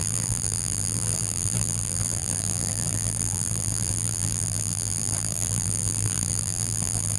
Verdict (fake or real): fake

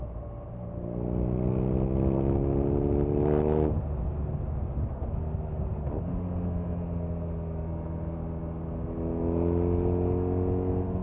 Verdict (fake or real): real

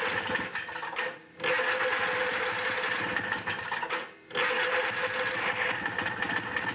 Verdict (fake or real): real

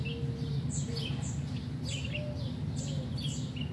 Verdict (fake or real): real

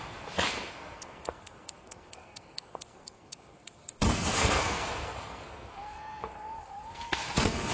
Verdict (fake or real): fake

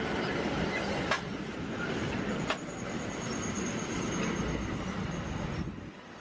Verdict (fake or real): real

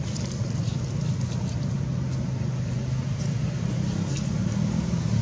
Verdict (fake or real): real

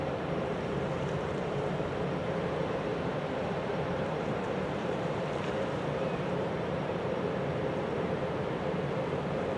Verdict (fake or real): fake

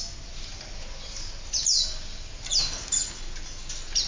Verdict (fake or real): real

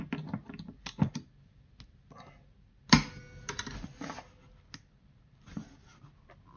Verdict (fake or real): real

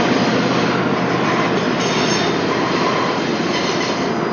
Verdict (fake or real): real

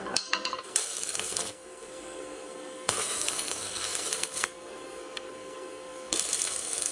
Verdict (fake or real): fake